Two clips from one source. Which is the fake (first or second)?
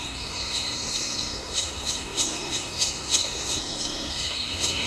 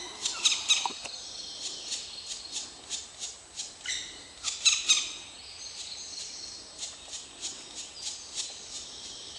first